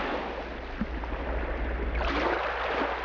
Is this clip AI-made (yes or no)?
no